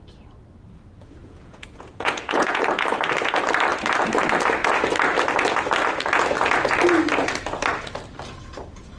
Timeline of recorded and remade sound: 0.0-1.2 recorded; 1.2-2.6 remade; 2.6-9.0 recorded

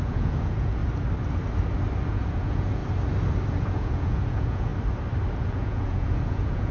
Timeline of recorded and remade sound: 0.0-0.8 remade; 0.8-2.1 recorded; 2.1-2.8 remade; 2.8-3.5 recorded; 3.5-4.7 remade; 4.7-5.4 recorded; 5.4-6.7 remade

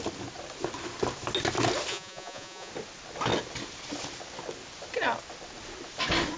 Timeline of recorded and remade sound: 0.0-1.9 recorded; 1.9-2.7 remade; 2.7-6.4 recorded